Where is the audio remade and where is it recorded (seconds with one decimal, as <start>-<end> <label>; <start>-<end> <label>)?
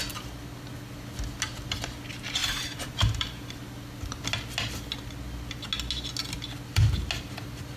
0.0-2.4 recorded; 2.4-3.5 remade; 3.5-7.8 recorded